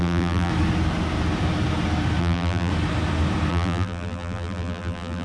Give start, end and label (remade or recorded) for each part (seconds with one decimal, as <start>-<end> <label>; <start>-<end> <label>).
0.0-0.5 remade; 0.5-2.2 recorded; 2.2-2.7 remade; 2.7-3.5 recorded; 3.5-5.2 remade